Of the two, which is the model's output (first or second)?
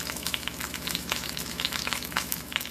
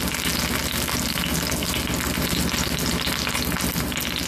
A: first